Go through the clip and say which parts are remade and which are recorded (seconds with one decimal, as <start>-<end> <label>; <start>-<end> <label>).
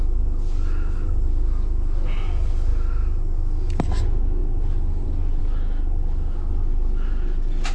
0.0-7.7 recorded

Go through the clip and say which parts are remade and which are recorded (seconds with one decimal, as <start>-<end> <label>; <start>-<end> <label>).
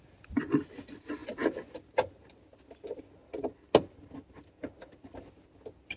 0.0-6.0 recorded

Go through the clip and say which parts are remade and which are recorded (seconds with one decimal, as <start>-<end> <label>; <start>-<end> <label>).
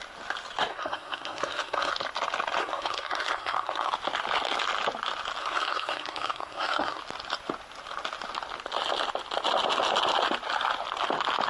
0.0-0.7 recorded; 0.7-1.9 remade; 1.9-2.6 recorded; 2.6-3.9 remade; 3.9-5.4 recorded; 5.4-7.0 remade; 7.0-11.5 recorded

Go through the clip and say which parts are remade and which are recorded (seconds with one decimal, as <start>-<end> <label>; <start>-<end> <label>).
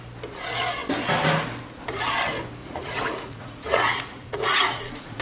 0.0-2.6 recorded; 2.6-5.2 remade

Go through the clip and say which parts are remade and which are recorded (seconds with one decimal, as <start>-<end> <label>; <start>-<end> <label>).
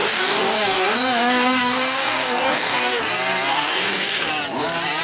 0.0-3.0 remade; 3.0-3.5 recorded; 3.5-4.3 remade; 4.3-5.0 recorded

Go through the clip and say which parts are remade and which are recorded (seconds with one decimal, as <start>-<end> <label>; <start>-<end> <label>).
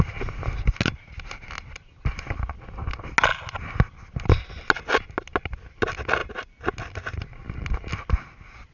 0.0-8.7 recorded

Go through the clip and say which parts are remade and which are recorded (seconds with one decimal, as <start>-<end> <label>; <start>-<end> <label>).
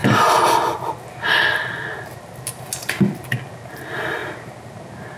0.0-5.2 recorded